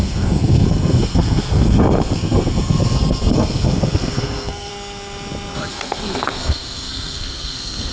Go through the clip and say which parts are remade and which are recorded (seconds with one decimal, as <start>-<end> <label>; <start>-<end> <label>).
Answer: 0.0-4.7 remade; 4.7-5.7 recorded; 5.7-7.9 remade